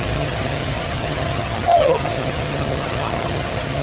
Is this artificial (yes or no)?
yes